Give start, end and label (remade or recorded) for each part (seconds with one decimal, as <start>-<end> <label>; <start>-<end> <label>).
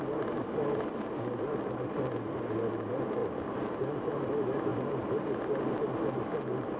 0.0-6.8 recorded